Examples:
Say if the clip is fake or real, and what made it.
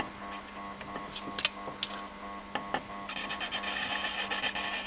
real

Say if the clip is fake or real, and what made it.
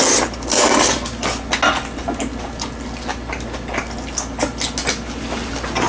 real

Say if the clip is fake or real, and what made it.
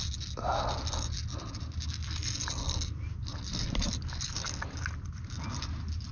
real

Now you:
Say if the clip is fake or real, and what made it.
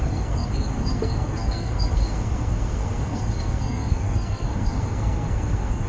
fake, codec, SNAC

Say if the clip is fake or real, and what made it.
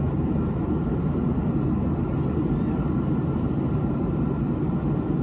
real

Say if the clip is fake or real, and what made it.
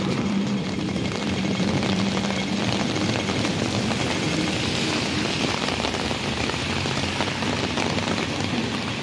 fake, vocoder, BigVGAN v2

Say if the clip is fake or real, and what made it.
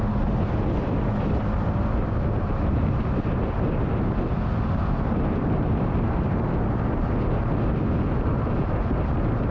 real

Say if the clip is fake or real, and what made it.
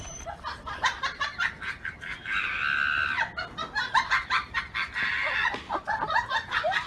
fake, vocoder, BigVGAN v2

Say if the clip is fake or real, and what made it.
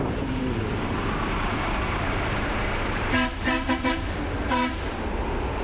fake, vocoder, BigVGAN v2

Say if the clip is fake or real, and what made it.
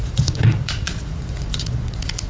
fake, vocoder, Vocos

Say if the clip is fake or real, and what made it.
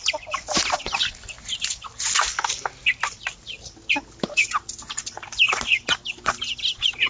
real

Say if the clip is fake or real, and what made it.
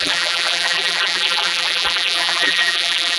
fake, vocoder, BigVGAN v2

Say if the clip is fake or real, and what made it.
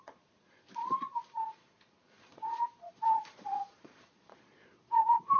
fake, vocoder, Vocos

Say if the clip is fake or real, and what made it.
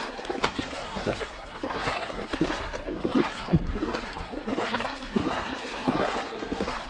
fake, codec, SNAC